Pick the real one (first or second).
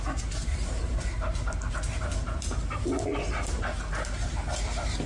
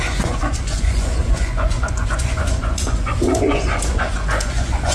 first